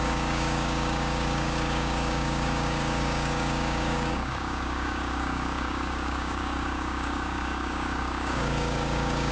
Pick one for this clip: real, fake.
fake